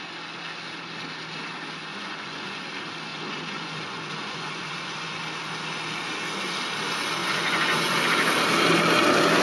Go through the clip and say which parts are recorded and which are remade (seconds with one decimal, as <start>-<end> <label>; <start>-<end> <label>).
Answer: 0.0-1.9 recorded; 1.9-2.6 remade; 2.6-3.1 recorded; 3.1-5.2 remade; 5.2-7.2 recorded; 7.2-8.0 remade; 8.0-9.4 recorded